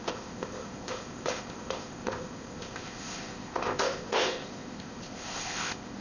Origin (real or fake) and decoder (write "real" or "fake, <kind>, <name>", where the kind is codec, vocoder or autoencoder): fake, codec, ZipCodec